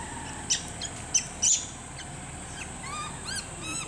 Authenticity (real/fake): real